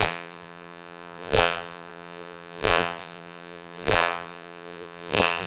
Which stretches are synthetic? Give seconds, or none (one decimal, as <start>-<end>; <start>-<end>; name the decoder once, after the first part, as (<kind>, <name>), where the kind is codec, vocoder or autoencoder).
0.0-5.5 (vocoder, BigVGAN v2)